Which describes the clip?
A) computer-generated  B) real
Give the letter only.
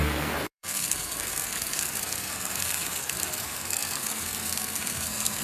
A